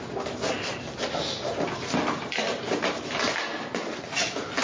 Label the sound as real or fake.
real